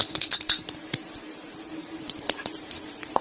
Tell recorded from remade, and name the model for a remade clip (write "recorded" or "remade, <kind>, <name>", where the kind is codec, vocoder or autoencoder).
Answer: remade, vocoder, BigVGAN v2